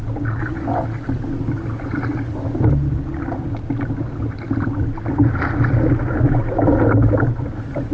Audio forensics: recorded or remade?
recorded